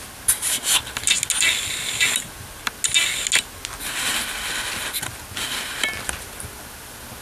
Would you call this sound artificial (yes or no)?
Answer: no